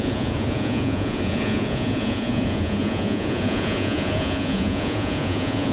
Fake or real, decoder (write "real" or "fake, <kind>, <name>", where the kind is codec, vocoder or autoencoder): fake, vocoder, Vocos